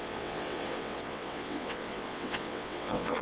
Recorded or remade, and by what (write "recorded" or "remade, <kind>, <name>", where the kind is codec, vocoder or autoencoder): remade, vocoder, WaveNeXt